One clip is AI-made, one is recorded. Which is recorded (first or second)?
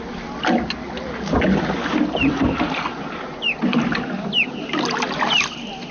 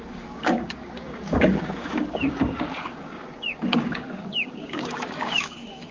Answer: first